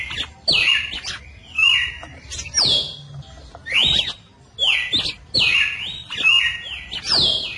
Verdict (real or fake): real